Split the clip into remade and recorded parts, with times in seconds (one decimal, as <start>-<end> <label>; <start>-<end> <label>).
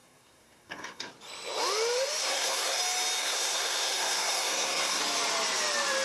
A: 0.0-1.1 remade; 1.1-2.2 recorded; 2.2-2.8 remade; 2.8-3.2 recorded; 3.2-5.0 remade; 5.0-6.0 recorded